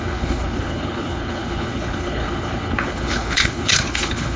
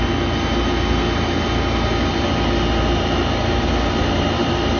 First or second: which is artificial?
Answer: first